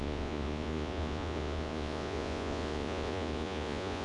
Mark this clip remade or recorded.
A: remade